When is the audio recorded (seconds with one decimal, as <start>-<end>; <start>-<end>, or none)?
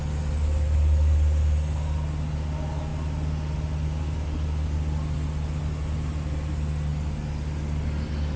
0.0-8.4